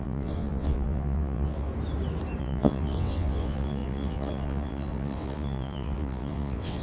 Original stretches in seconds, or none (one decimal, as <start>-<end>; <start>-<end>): 1.7-2.4